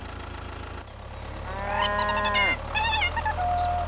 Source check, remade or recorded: recorded